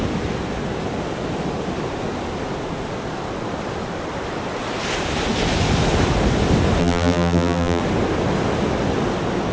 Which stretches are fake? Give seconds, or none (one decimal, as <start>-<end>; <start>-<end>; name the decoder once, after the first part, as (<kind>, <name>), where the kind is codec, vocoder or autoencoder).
6.8-7.8 (vocoder, BigVGAN v2)